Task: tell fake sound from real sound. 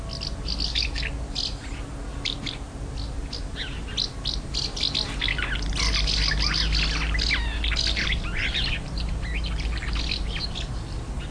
real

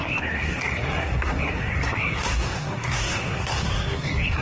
fake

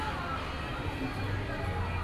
real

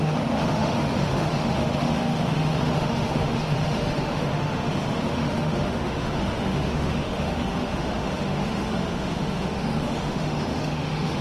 fake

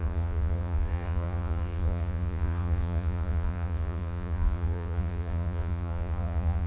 fake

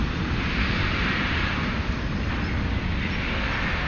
real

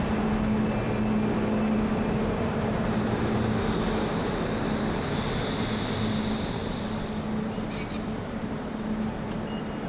real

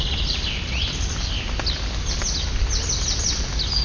real